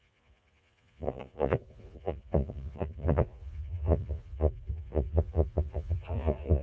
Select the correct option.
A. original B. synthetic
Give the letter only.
B